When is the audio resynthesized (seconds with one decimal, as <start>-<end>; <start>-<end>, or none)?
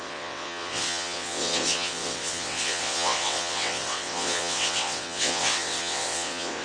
0.0-6.6